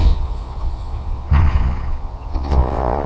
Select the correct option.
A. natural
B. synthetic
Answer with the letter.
B